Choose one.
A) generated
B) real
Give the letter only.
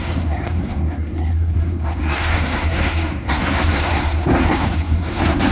A